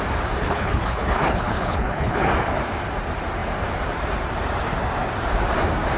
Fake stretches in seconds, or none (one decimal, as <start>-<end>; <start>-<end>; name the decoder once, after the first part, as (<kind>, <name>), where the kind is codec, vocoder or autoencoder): 0.4-2.3 (codec, HILCodec)